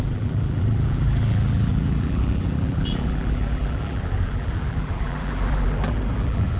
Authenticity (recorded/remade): remade